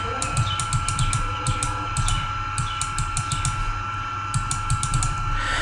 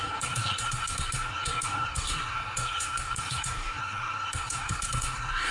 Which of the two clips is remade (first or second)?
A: second